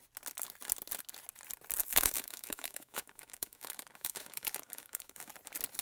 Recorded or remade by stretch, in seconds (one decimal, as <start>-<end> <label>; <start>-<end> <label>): 0.0-1.8 recorded; 1.8-5.3 remade; 5.3-5.8 recorded